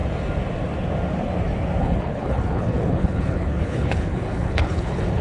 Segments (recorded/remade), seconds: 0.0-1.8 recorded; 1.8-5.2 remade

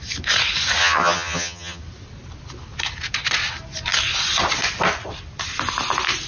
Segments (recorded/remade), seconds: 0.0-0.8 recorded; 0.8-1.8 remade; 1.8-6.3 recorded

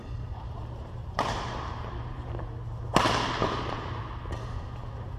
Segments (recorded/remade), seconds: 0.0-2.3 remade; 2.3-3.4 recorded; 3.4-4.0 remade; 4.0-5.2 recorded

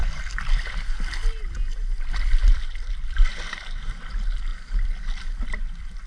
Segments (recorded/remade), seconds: 0.0-2.9 recorded; 2.9-6.1 remade

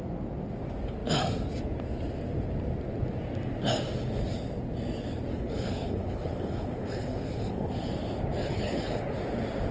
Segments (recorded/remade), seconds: 0.0-5.3 recorded; 5.3-7.9 remade; 7.9-8.4 recorded; 8.4-9.0 remade; 9.0-9.7 recorded

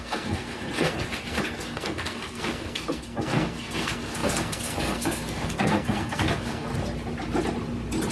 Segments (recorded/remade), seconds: 0.0-6.7 remade; 6.7-8.1 recorded